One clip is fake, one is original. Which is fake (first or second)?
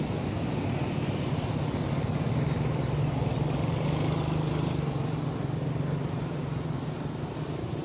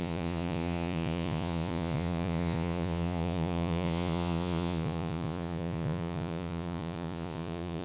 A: second